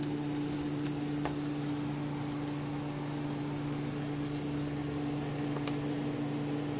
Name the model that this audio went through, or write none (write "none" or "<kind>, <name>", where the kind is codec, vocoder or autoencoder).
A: none